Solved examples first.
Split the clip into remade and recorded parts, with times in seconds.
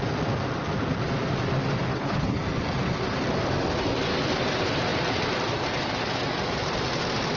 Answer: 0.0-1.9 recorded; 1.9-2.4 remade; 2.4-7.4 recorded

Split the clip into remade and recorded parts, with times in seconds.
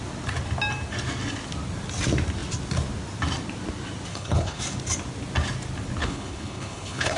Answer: 0.0-4.1 recorded; 4.1-4.6 remade; 4.6-6.0 recorded; 6.0-7.2 remade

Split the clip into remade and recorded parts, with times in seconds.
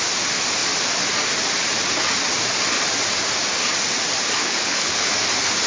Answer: 0.0-4.4 recorded; 4.4-5.1 remade; 5.1-5.7 recorded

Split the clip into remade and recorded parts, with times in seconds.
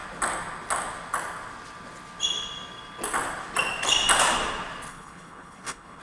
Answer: 0.0-4.9 recorded; 4.9-6.0 remade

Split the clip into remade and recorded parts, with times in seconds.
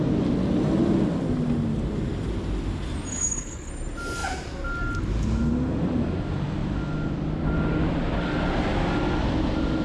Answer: 0.0-3.1 recorded; 3.1-3.7 remade; 3.7-9.8 recorded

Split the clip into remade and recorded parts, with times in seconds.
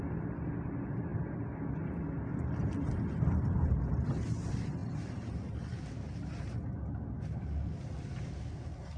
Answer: 0.0-9.0 recorded